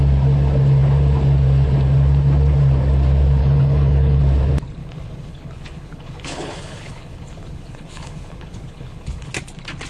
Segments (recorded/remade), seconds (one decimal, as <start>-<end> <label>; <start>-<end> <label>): 0.0-3.4 recorded; 3.4-4.2 remade; 4.2-4.8 recorded; 4.8-9.3 remade; 9.3-9.9 recorded